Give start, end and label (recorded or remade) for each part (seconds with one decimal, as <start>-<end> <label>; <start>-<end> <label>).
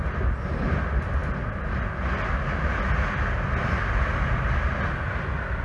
0.0-5.6 recorded